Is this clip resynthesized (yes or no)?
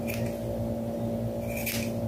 no